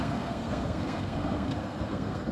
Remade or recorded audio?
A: remade